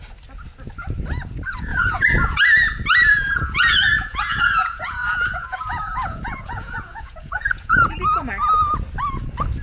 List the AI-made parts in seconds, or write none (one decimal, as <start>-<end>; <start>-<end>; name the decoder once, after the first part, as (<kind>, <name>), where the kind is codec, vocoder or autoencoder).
1.7-2.4 (vocoder, Vocos); 3.1-7.9